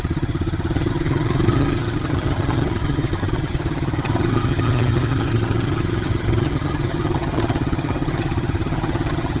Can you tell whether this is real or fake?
fake